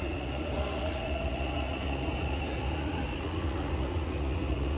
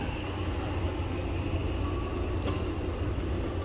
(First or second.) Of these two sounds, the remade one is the first